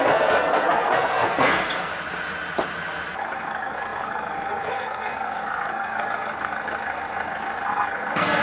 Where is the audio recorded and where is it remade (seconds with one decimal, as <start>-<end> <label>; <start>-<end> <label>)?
0.0-1.9 remade; 1.9-3.2 recorded; 3.2-8.4 remade